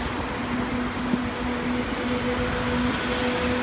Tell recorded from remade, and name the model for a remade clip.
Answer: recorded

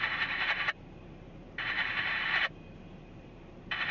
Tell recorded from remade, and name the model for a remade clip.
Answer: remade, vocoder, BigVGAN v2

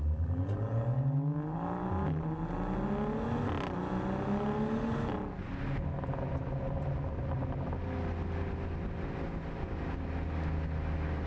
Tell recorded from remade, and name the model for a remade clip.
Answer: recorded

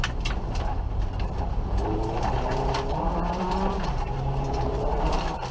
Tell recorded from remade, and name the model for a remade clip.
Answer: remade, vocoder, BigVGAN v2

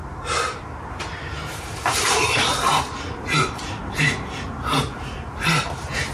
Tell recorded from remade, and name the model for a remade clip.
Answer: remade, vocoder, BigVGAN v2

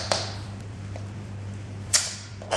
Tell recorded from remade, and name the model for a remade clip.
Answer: remade, vocoder, BigVGAN v2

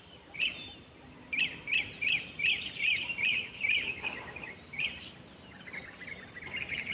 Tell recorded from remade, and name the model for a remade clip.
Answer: remade, vocoder, BigVGAN v2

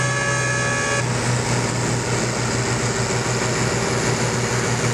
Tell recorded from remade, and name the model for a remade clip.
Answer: recorded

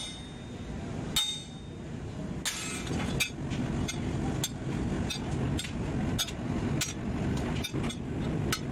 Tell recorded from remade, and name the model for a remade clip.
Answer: recorded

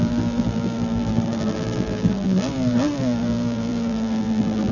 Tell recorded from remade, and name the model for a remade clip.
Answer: remade, vocoder, BigVGAN v2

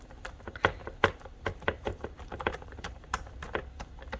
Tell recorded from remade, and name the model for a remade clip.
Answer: remade, vocoder, BigVGAN v2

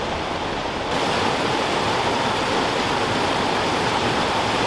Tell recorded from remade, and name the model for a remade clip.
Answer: remade, vocoder, BigVGAN v2